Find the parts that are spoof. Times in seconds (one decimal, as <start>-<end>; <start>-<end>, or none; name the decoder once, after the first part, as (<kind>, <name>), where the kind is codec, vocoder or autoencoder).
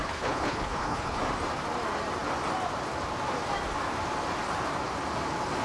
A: 0.0-1.2 (codec, HILCodec)